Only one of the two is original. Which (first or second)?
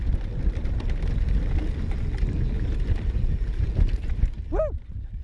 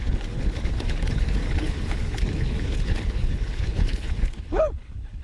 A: first